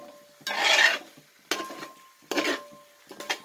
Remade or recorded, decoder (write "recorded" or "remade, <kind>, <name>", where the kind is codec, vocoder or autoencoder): recorded